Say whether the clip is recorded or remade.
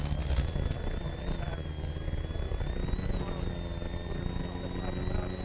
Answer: recorded